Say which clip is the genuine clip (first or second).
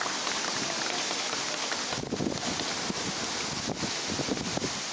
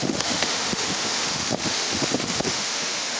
first